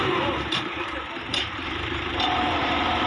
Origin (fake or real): fake